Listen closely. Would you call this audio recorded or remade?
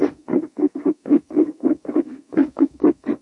remade